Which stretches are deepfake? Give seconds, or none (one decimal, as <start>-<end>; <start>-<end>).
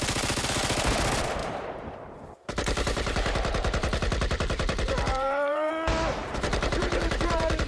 1.4-5.7; 6.2-7.7